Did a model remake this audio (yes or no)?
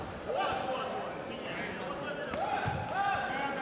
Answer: no